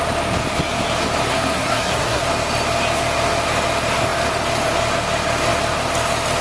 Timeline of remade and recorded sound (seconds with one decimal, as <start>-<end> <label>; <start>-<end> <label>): 0.0-1.3 recorded; 1.3-2.2 remade; 2.2-6.4 recorded